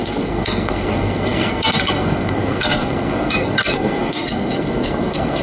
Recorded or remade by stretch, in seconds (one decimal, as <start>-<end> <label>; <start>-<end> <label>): 0.0-5.4 remade